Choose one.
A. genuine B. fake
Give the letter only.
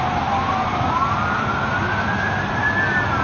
A